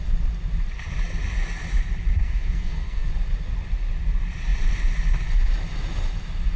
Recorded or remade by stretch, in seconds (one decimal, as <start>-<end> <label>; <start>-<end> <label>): 0.0-2.1 recorded; 2.1-3.1 remade; 3.1-6.6 recorded